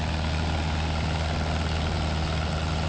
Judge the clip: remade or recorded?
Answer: recorded